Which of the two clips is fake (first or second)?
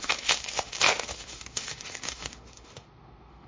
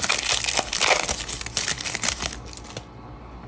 first